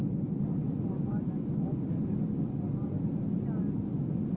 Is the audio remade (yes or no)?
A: no